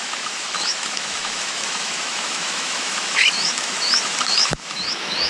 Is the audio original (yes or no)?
no